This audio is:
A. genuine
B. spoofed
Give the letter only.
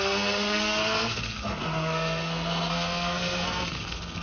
B